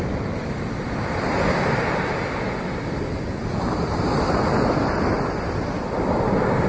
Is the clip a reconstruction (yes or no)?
no